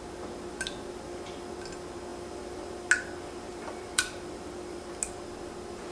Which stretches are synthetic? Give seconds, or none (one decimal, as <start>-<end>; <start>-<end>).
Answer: 2.1-2.7; 3.5-4.9